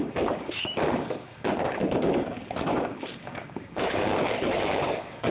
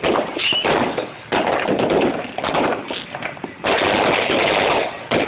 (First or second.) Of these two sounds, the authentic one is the second